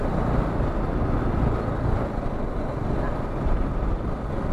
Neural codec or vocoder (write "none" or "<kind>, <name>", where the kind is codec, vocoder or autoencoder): none